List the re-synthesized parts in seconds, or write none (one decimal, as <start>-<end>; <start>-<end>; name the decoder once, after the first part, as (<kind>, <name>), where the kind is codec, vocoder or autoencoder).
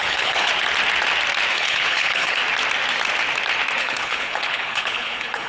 0.0-0.5 (codec, HILCodec); 1.5-2.4; 3.8-5.5